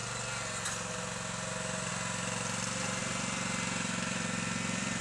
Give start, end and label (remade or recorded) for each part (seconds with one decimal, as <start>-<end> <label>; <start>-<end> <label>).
0.0-3.0 recorded; 3.0-5.0 remade